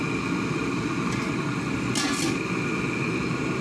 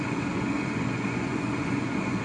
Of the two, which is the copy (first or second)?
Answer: second